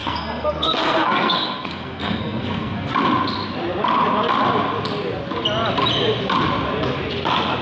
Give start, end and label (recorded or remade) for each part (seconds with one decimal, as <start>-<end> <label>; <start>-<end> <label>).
0.0-2.9 remade; 2.9-7.6 recorded